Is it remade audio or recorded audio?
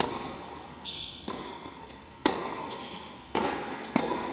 remade